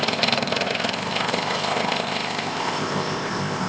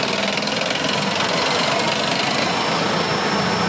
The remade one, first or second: first